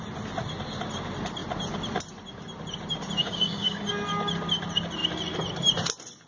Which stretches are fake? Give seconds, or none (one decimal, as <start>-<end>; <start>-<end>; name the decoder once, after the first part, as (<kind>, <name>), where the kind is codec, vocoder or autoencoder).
3.2-3.8 (codec, DAC)